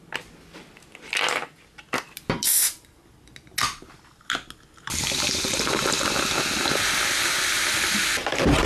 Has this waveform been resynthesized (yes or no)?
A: no